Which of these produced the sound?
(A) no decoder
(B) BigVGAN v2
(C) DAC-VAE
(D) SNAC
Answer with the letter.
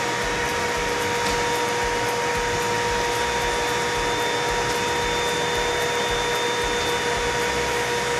A